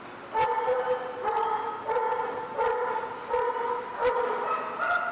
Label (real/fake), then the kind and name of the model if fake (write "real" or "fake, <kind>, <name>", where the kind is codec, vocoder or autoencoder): real